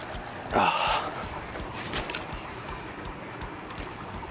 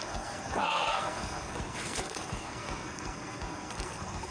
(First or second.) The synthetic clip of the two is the second